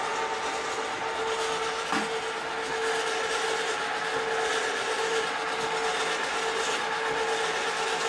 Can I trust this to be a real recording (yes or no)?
yes